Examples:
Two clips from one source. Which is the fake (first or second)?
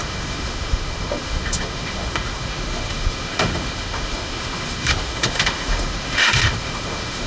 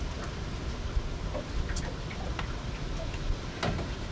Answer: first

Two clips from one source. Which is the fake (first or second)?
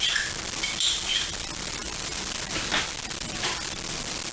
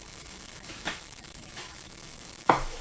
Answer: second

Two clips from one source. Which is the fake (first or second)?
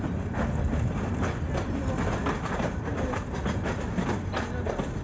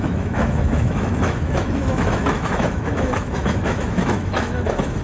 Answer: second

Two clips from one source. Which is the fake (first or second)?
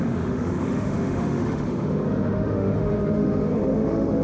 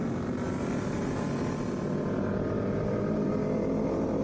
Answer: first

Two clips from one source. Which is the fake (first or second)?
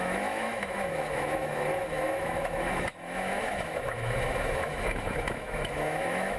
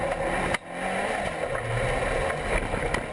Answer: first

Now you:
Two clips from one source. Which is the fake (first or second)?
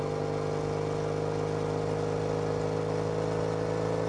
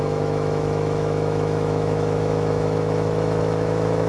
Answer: second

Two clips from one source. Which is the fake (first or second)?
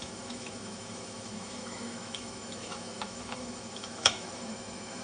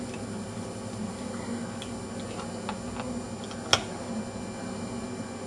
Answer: first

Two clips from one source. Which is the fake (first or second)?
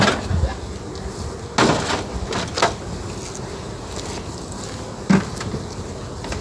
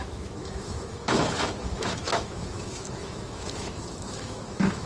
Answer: second